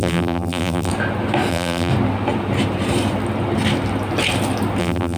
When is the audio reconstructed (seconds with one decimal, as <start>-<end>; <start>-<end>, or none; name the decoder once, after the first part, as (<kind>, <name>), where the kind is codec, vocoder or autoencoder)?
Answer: 0.0-0.9 (vocoder, BigVGAN v2); 1.5-1.9; 4.8-5.2